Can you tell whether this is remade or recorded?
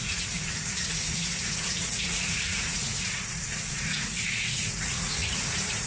remade